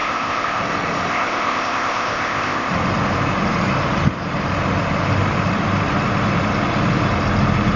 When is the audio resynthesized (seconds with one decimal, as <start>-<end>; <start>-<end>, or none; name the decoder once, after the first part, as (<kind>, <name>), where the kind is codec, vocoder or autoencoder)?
0.0-0.6 (codec, ZipCodec); 1.1-2.7